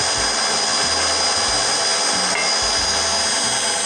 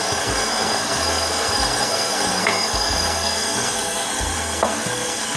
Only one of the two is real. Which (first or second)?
first